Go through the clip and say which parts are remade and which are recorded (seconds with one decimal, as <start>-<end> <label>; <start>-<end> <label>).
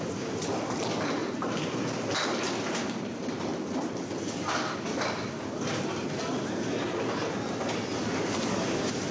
0.0-9.1 recorded